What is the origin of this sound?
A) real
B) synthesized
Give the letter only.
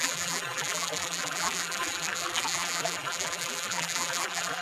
B